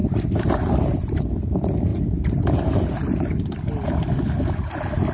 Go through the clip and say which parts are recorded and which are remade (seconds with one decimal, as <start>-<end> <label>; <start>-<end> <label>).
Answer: 0.0-5.1 recorded